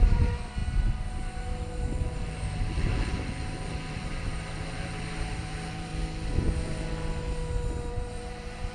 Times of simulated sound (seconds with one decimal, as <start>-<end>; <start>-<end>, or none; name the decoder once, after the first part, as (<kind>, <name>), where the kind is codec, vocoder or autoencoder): 0.0-5.9 (vocoder, BigVGAN v2); 7.9-8.7